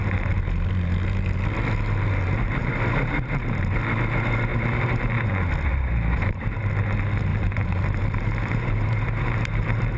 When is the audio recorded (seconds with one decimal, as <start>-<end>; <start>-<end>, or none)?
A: 0.0-2.6; 3.4-4.5; 5.3-5.7; 6.6-7.3